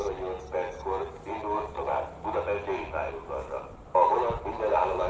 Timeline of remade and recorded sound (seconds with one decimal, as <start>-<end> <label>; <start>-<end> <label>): 0.0-5.1 recorded